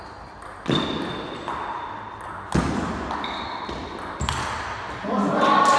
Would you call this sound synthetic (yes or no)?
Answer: no